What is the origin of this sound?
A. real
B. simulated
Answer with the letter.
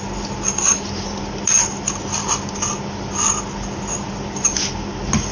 A